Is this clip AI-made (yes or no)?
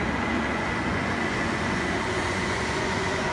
yes